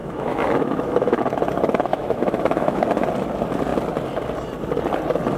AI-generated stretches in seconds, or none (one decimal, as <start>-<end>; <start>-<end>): 0.0-1.2; 1.9-2.8